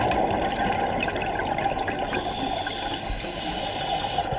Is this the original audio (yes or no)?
yes